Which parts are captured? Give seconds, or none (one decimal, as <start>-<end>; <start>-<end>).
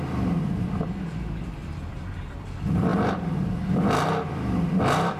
none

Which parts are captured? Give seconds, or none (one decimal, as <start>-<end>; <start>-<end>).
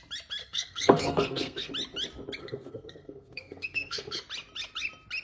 0.0-0.4; 1.7-2.4; 4.2-5.2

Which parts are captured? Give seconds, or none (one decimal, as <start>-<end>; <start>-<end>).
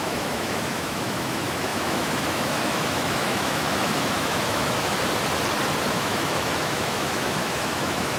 4.9-5.9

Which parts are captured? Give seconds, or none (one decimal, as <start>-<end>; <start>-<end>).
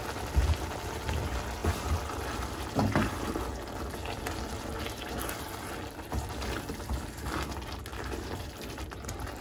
0.0-7.9